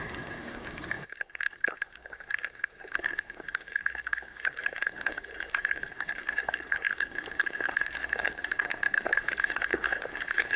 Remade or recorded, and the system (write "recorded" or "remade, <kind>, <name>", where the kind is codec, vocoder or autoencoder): remade, codec, SNAC